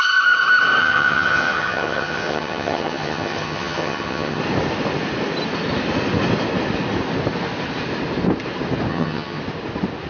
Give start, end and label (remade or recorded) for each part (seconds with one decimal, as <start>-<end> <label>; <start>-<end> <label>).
0.0-0.8 recorded; 0.8-4.4 remade; 4.4-8.9 recorded; 8.9-9.4 remade; 9.4-10.1 recorded